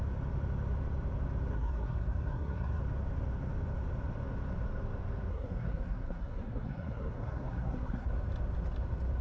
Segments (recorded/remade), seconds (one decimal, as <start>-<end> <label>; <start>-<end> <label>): 0.0-1.5 recorded; 1.5-2.8 remade; 2.8-5.3 recorded; 5.3-8.1 remade; 8.1-9.2 recorded